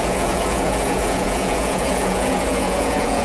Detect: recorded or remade remade